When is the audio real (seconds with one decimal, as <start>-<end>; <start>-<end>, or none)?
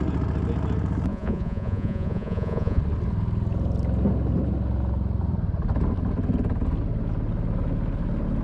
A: 0.0-1.1; 2.8-8.4